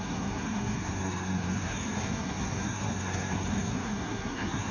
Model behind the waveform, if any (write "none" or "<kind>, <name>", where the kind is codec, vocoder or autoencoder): codec, SNAC